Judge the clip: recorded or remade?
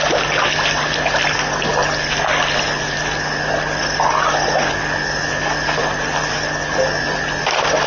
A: recorded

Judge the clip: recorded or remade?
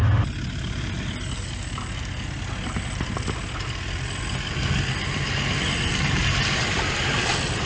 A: recorded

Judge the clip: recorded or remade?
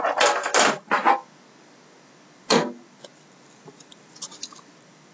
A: recorded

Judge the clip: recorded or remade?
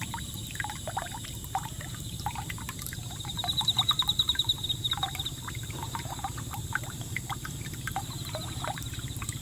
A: remade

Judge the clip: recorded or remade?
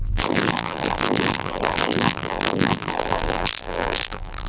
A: remade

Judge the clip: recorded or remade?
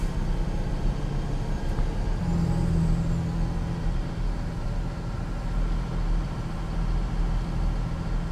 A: recorded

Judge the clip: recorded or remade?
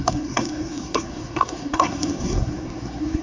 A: remade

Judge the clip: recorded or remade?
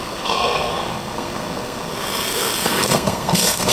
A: remade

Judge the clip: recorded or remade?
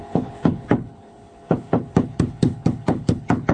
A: remade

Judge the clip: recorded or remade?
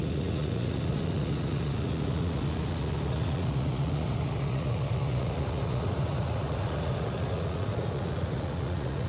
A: remade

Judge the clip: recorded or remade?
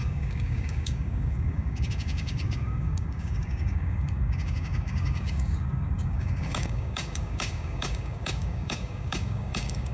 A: remade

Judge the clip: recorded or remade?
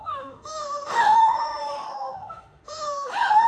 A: remade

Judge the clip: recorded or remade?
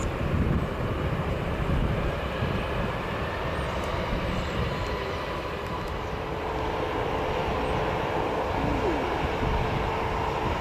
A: remade